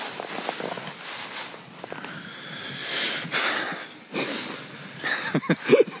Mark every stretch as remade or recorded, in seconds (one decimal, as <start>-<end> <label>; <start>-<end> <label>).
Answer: 0.0-6.0 recorded